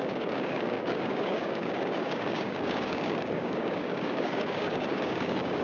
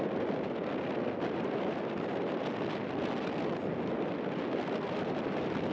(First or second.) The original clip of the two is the second